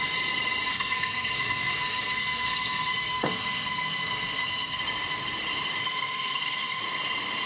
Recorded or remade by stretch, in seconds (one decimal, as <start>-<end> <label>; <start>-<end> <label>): 0.0-0.7 recorded; 0.7-4.8 remade; 4.8-5.8 recorded; 5.8-6.8 remade; 6.8-7.5 recorded